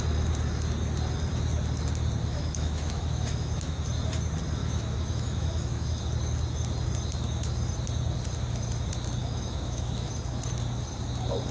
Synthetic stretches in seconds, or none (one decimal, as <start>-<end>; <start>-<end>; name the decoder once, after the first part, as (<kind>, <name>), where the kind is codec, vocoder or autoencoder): 2.2-3.8 (autoencoder, DAC-VAE); 4.6-6.0; 9.2-10.1